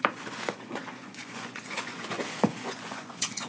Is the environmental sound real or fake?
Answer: fake